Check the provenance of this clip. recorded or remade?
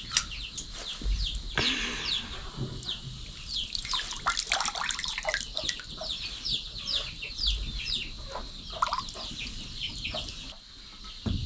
recorded